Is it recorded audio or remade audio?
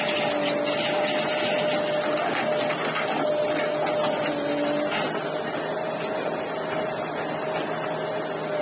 recorded